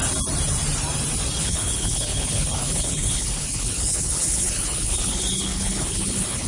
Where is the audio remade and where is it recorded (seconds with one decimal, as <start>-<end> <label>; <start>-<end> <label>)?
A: 0.0-1.4 recorded; 1.4-6.5 remade